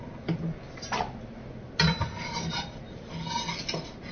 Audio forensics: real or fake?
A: real